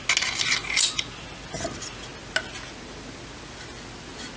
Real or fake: real